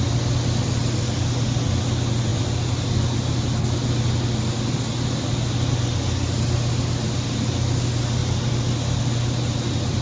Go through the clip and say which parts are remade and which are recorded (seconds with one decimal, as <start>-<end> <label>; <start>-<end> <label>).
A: 0.0-10.0 recorded